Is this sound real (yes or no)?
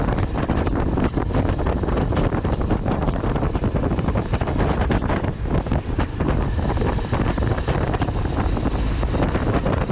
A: no